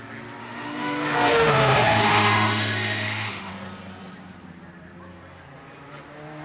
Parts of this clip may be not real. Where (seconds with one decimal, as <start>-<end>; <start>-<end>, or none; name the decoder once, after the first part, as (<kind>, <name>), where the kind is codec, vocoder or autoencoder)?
0.4-3.5 (autoencoder, DAC-VAE)